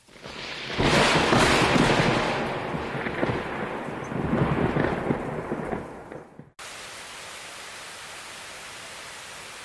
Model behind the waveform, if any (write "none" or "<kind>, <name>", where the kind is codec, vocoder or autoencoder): none